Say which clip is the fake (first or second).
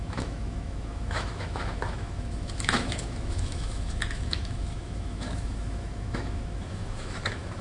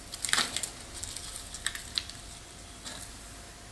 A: first